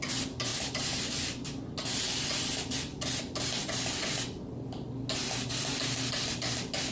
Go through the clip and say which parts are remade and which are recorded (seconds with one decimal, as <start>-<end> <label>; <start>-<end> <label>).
0.0-0.5 recorded; 0.5-1.1 remade; 1.1-6.9 recorded